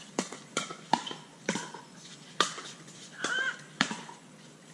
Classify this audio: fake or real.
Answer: fake